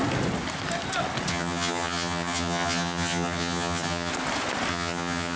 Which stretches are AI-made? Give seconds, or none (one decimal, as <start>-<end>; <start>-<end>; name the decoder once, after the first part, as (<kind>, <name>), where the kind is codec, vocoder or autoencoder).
1.3-4.1 (vocoder, HiFi-GAN); 4.7-5.4